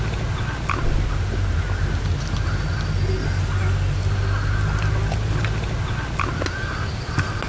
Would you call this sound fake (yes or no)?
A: no